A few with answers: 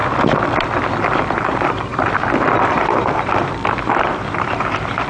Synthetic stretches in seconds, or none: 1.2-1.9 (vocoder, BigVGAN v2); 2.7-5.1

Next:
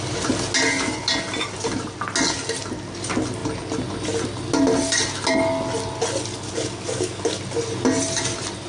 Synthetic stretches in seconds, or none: 6.3-7.4 (codec, DAC)

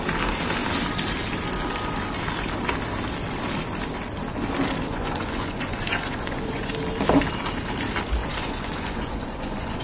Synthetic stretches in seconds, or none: 4.9-6.7 (vocoder, Vocos); 8.2-9.8

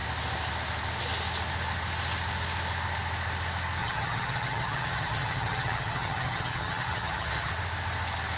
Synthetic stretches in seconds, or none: 3.8-7.5 (vocoder, HiFi-GAN)

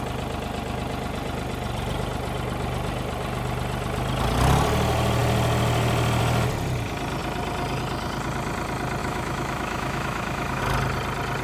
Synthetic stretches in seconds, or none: 9.0-10.6 (autoencoder, DAC-VAE)

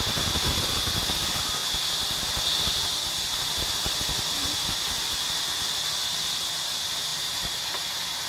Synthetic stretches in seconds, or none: 7.1-7.6 (vocoder, BigVGAN v2)

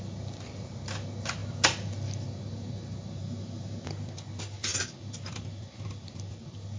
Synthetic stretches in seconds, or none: none